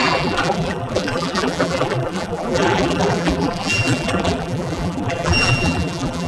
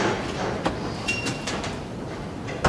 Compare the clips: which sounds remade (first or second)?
first